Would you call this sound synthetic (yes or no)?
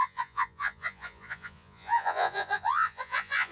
yes